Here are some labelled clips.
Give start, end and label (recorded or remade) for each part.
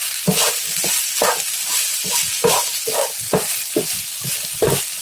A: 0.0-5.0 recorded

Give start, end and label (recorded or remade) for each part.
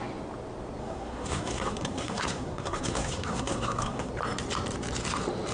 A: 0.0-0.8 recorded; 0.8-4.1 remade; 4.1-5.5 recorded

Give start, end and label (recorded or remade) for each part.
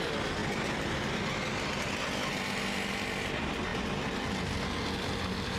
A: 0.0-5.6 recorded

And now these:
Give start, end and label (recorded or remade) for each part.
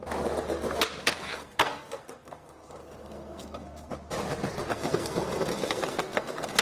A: 0.0-1.0 recorded; 1.0-3.9 remade; 3.9-4.7 recorded; 4.7-6.6 remade